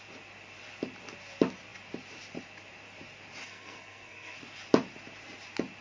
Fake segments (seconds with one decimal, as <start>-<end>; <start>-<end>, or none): 3.4-4.4

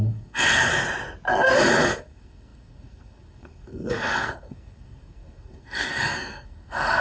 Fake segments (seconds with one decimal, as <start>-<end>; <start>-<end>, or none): 0.0-0.7; 1.8-7.0

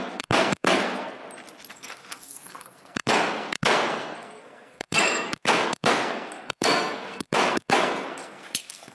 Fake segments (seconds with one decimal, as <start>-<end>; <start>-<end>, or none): 0.0-1.2; 1.7-8.9

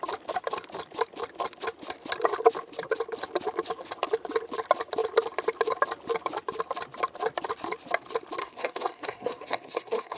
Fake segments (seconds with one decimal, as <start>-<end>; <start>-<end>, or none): 8.4-10.2

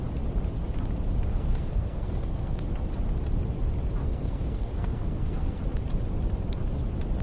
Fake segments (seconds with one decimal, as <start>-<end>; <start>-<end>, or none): 1.3-2.6; 4.0-5.6

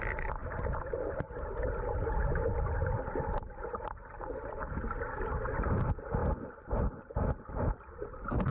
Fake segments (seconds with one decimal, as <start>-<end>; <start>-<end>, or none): none